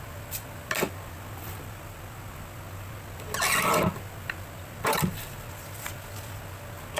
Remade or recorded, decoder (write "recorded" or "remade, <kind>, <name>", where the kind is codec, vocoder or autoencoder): recorded